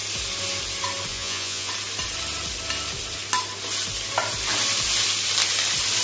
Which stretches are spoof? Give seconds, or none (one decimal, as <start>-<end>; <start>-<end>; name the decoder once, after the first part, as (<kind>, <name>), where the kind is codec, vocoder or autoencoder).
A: 1.1-1.7 (vocoder, Vocos)